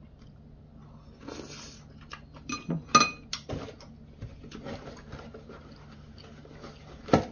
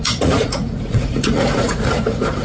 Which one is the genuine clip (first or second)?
first